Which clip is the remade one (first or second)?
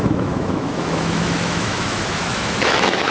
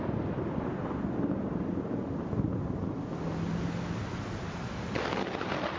first